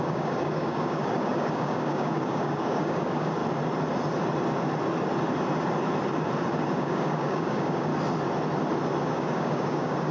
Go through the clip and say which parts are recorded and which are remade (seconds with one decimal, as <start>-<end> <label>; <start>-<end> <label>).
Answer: 0.0-3.4 remade; 3.4-6.8 recorded; 6.8-7.9 remade; 7.9-9.1 recorded; 9.1-10.1 remade